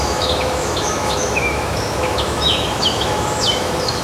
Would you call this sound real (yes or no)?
no